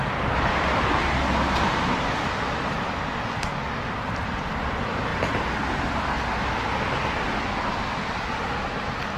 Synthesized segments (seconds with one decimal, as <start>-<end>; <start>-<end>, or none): none